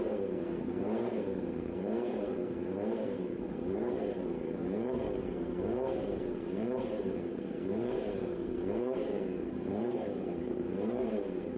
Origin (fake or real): fake